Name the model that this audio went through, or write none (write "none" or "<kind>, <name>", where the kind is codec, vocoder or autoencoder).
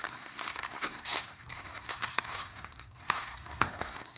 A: codec, SNAC